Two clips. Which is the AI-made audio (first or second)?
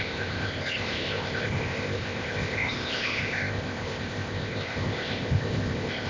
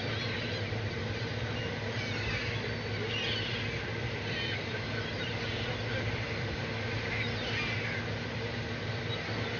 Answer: first